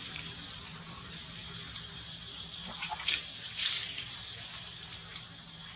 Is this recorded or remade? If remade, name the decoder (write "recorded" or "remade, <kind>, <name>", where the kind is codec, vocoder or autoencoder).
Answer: remade, vocoder, BigVGAN v2